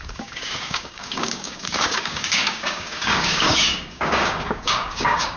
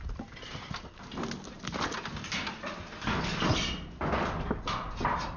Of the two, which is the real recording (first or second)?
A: second